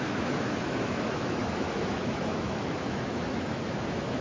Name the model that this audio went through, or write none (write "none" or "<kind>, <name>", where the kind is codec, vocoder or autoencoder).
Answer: autoencoder, DAC-VAE